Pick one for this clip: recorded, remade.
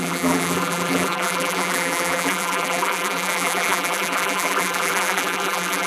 remade